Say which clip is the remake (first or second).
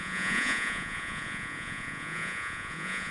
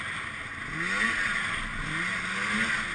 first